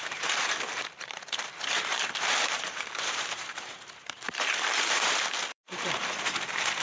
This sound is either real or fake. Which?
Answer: fake